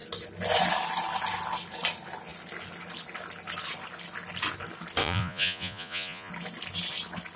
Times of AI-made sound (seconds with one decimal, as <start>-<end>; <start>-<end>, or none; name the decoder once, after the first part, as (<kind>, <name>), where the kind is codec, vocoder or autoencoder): 5.0-6.3 (vocoder, Vocos)